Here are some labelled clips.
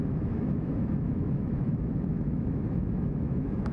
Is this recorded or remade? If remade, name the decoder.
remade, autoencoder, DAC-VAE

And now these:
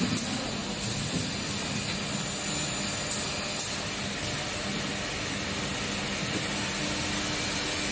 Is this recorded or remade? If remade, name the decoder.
recorded